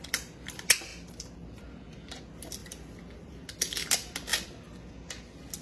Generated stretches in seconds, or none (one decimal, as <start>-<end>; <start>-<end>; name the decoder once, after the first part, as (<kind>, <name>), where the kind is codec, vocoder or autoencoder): none